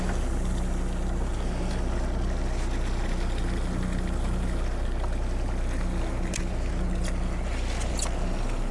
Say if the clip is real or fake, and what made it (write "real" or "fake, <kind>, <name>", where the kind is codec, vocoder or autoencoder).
real